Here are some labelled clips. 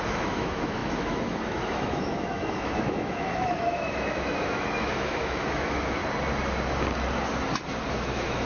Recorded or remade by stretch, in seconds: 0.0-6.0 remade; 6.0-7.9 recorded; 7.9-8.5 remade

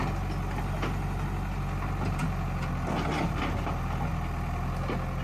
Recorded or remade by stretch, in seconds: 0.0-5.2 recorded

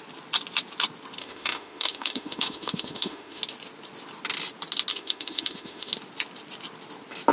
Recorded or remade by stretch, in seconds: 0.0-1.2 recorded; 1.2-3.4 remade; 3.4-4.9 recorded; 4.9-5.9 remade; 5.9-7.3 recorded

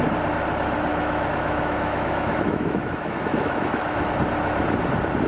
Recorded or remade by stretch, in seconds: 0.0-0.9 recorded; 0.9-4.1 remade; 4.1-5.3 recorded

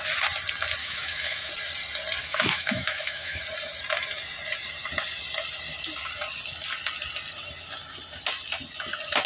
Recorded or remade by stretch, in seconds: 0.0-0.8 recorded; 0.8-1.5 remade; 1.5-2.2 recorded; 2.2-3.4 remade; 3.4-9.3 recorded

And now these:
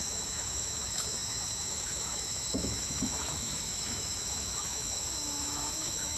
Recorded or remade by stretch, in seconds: 0.0-6.2 remade